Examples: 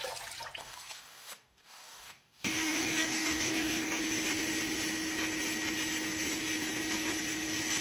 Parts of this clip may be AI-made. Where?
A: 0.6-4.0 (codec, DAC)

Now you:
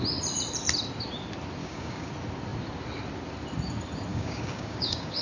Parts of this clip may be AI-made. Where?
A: 1.6-2.1 (codec, DAC); 4.1-5.2

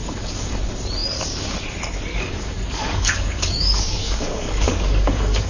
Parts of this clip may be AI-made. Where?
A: 0.0-0.6 (codec, DAC); 2.1-5.5

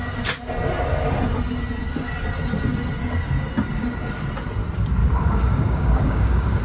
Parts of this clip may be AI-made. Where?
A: 5.0-6.6 (codec, DAC)